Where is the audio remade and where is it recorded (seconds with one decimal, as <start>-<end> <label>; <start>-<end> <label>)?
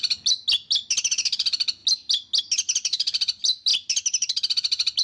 0.0-5.0 recorded